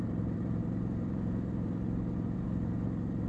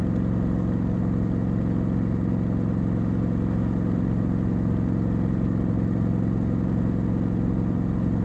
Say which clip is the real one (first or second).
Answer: second